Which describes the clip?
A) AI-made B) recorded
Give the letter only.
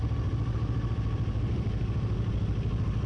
B